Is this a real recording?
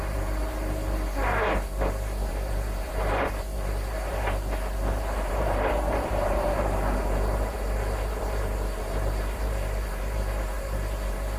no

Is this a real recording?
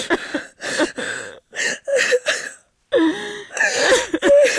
yes